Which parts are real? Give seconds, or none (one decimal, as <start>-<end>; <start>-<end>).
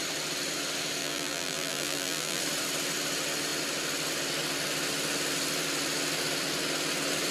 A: 0.0-1.0; 2.4-7.3